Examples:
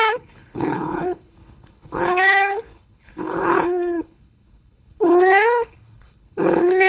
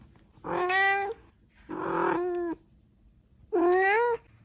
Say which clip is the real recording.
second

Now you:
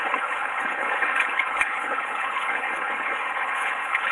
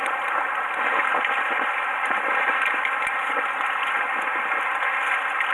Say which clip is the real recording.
second